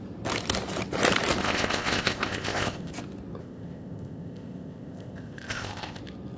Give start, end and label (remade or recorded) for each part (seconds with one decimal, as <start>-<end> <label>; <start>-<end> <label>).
0.0-1.4 recorded; 1.4-2.9 remade; 2.9-3.4 recorded; 3.4-6.0 remade; 6.0-6.4 recorded

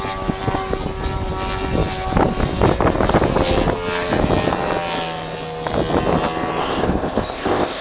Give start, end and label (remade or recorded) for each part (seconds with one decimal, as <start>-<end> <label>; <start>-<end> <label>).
0.0-6.6 recorded; 6.6-7.8 remade

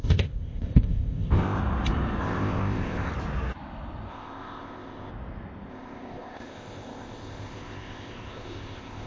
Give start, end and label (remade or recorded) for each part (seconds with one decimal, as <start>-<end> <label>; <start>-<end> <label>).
0.0-1.6 remade; 1.6-2.2 recorded; 2.2-3.1 remade; 3.1-4.1 recorded; 4.1-5.1 remade; 5.1-5.7 recorded; 5.7-9.1 remade

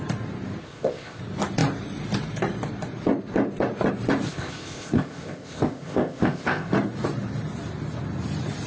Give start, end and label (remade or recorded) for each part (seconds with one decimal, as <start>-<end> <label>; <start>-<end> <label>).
0.0-0.6 recorded; 0.6-1.2 remade; 1.2-4.3 recorded; 4.3-6.7 remade; 6.7-8.7 recorded

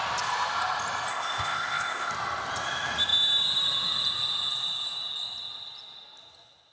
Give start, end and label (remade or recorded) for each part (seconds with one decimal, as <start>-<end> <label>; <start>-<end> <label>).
0.0-1.1 recorded; 1.1-2.1 remade; 2.1-6.7 recorded

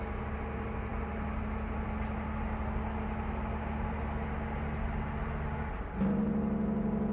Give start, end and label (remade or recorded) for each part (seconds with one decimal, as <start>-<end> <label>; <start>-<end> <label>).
0.0-7.1 recorded

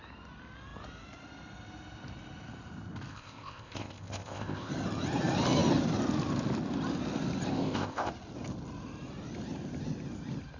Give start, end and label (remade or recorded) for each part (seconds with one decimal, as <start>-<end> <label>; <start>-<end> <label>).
0.0-3.1 recorded; 3.1-4.7 remade; 4.7-7.5 recorded; 7.5-8.1 remade; 8.1-10.6 recorded